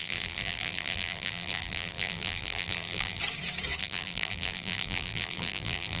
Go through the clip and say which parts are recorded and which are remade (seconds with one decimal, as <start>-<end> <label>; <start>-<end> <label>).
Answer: 0.0-3.2 remade; 3.2-3.8 recorded; 3.8-6.0 remade